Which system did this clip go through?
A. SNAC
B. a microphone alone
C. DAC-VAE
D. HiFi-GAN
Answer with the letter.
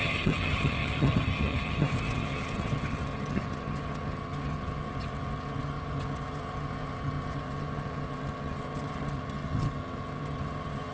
D